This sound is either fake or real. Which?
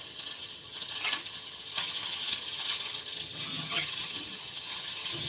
fake